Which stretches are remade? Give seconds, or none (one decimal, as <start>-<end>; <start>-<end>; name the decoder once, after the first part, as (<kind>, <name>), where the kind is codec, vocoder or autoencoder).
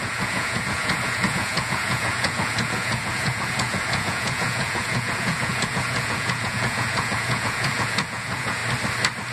0.0-8.6 (vocoder, Vocos)